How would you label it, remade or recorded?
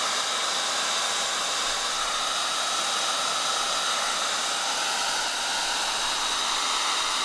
recorded